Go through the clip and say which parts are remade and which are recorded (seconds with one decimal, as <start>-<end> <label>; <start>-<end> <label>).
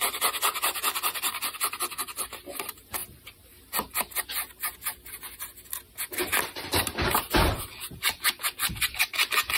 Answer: 0.0-9.6 recorded